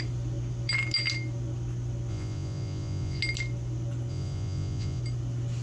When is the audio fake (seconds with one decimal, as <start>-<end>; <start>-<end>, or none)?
2.1-3.2; 4.1-5.0